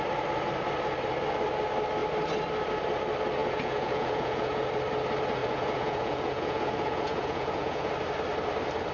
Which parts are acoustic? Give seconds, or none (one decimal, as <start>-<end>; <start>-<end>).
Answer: 0.0-3.4; 4.7-5.4; 7.9-8.9